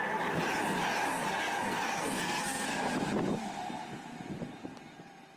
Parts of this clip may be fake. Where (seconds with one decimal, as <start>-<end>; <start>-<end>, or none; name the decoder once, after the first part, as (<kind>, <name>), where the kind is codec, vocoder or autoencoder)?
1.1-2.8 (codec, SNAC)